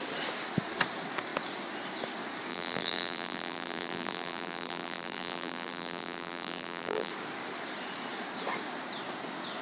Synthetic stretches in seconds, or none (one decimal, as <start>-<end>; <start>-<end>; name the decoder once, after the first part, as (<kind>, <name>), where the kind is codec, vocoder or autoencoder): 2.5-7.1 (vocoder, BigVGAN v2)